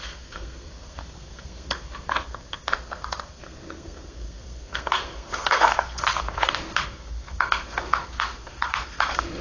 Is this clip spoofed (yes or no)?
yes